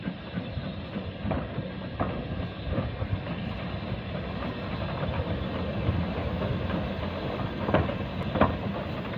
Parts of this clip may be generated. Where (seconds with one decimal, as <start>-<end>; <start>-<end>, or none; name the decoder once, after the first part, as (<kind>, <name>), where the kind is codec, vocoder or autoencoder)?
none